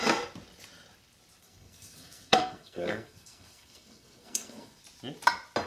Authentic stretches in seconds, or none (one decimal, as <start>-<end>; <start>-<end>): 0.0-1.4; 4.8-5.7